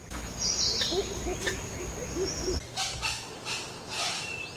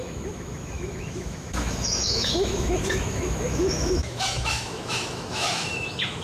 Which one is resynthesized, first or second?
second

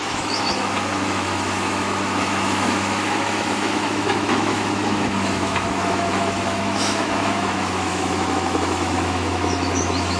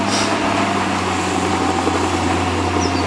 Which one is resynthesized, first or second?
first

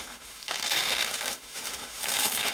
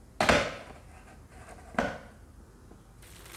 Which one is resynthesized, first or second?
first